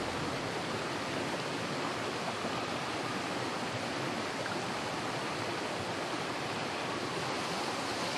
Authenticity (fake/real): real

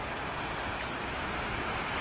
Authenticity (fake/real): real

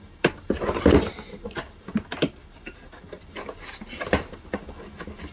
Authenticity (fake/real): real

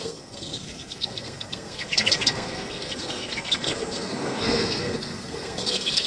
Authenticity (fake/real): fake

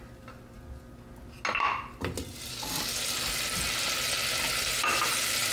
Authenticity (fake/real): real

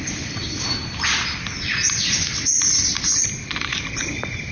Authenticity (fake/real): real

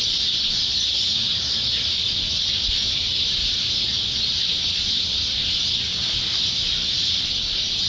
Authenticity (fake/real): real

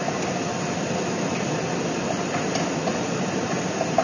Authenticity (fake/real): real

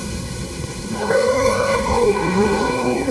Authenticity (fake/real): fake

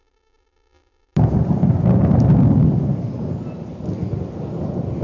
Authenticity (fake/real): real